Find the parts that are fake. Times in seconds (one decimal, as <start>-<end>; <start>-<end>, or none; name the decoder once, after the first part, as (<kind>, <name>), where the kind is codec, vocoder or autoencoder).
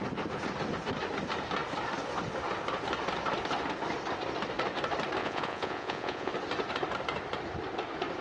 5.2-6.3 (vocoder, Vocos)